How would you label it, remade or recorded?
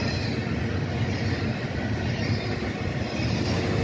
recorded